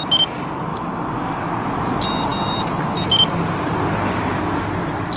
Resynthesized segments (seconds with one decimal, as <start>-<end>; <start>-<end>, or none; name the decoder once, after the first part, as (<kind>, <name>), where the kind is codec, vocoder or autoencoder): 0.7-1.4 (autoencoder, DAC-VAE)